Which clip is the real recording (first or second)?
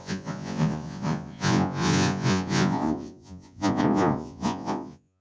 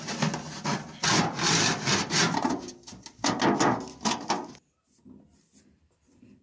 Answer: second